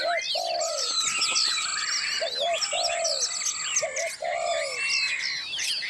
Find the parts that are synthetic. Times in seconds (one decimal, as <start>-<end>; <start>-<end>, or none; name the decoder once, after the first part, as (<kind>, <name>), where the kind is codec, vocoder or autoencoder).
none